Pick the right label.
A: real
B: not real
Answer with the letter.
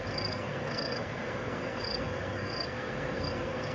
B